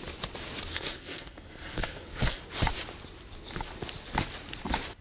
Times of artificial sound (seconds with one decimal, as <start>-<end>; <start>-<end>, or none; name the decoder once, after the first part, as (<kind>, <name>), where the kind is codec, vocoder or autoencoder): 0.7-2.4 (codec, SNAC)